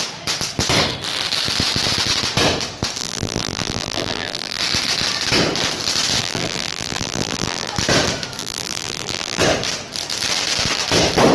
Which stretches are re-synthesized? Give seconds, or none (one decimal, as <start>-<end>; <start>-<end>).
3.0-4.6; 6.2-7.7; 8.4-9.4